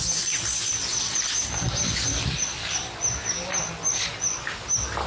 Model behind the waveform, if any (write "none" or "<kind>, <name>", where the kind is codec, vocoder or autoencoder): none